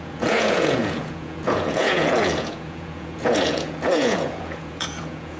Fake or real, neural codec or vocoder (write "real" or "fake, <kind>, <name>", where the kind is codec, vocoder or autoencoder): fake, vocoder, Vocos